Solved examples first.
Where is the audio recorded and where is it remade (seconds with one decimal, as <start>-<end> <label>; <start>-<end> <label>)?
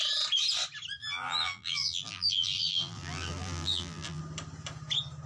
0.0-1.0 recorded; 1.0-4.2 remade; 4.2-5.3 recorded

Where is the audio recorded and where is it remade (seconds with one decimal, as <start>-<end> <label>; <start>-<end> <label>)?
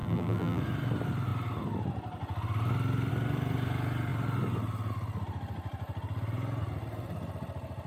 0.0-0.6 remade; 0.6-7.9 recorded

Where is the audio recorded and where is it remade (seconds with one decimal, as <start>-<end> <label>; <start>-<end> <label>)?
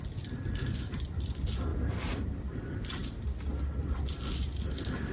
0.0-1.7 recorded; 1.7-2.4 remade; 2.4-5.1 recorded